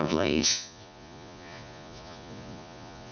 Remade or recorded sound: remade